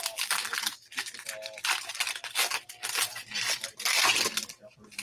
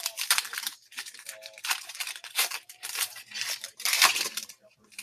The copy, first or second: second